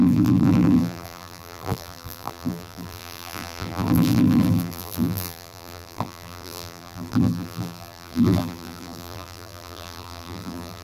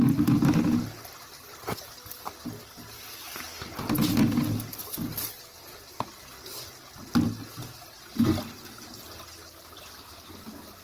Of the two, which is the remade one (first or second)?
first